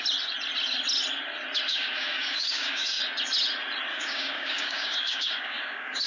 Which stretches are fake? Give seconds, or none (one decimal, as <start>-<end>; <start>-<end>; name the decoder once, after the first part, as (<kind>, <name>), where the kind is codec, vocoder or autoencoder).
1.7-3.0 (codec, DAC); 3.9-6.1

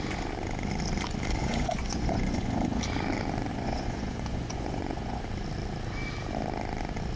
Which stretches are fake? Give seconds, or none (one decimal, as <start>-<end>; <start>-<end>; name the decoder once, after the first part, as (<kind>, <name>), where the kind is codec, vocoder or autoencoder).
1.4-2.8 (vocoder, Vocos); 3.5-5.2

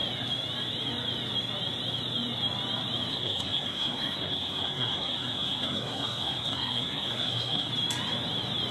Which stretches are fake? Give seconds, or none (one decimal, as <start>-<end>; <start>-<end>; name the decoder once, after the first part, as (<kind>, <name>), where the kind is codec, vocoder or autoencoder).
3.1-7.7 (codec, SNAC)